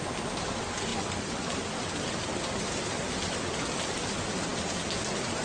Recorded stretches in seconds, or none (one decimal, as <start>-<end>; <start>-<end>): 0.0-5.4